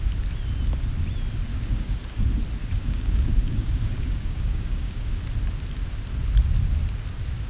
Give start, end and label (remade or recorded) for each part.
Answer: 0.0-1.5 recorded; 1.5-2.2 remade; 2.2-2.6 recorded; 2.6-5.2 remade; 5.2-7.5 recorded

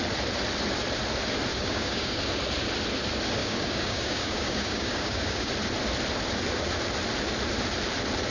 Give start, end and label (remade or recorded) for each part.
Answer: 0.0-1.5 recorded; 1.5-2.2 remade; 2.2-3.4 recorded; 3.4-5.5 remade; 5.5-8.3 recorded